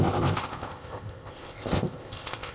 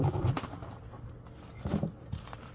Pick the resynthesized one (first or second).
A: first